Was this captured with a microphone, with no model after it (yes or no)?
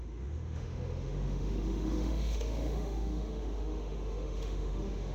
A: no